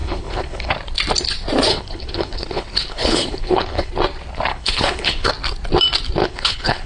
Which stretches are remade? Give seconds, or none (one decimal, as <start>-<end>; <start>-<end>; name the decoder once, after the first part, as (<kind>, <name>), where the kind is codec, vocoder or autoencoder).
0.0-0.7 (codec, HILCodec); 1.7-3.9; 4.5-5.3; 6.2-6.9